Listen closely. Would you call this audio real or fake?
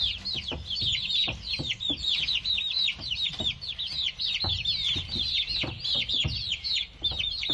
real